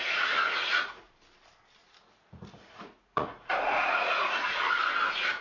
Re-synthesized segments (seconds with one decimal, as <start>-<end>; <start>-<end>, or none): 0.0-1.1; 1.8-4.7